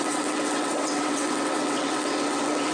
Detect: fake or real fake